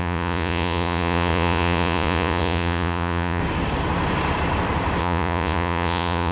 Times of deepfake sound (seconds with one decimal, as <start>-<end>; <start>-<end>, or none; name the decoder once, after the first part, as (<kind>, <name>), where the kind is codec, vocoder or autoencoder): 0.0-3.4 (vocoder, Vocos); 5.0-6.3